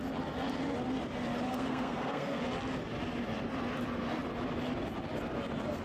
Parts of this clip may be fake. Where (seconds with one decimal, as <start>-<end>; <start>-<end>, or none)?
1.5-2.4